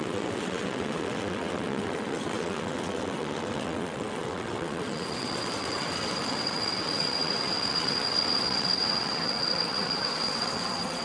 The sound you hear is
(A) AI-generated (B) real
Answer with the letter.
A